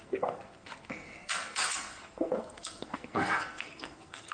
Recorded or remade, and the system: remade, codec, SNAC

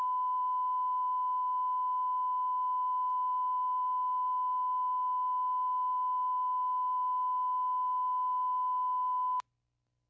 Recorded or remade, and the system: recorded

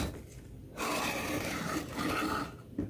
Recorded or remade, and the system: recorded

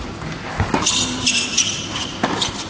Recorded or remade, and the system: recorded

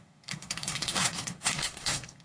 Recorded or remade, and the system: remade, codec, SNAC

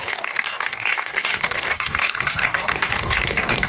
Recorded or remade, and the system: remade, codec, DAC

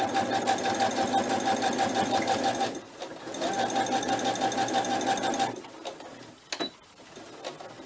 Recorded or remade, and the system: recorded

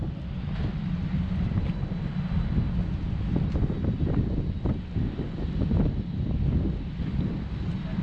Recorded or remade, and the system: recorded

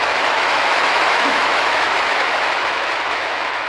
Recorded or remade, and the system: remade, autoencoder, DAC-VAE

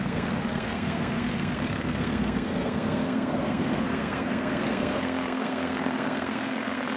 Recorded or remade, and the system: remade, codec, SNAC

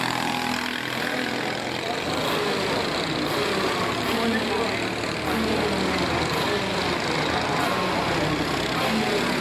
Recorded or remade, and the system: recorded